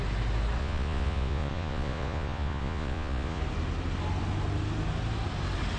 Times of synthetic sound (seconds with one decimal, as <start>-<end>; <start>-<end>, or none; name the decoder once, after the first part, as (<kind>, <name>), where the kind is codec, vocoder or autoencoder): 0.6-3.4 (vocoder, Vocos)